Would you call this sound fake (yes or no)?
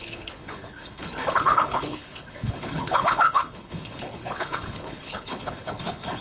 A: yes